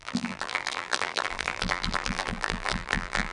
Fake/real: fake